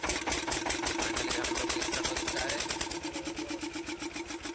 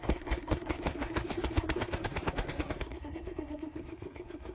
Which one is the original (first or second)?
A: first